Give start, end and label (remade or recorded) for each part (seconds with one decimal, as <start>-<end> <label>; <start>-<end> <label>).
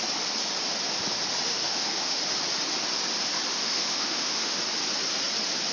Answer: 0.0-1.5 recorded; 1.5-2.2 remade; 2.2-3.5 recorded; 3.5-4.6 remade; 4.6-5.7 recorded